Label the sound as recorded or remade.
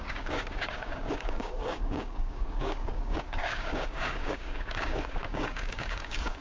remade